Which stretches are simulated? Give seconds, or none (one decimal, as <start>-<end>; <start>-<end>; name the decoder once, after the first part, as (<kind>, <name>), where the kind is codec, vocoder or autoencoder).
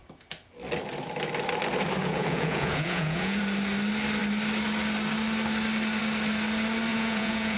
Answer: 2.0-3.4 (vocoder, Vocos); 6.9-7.6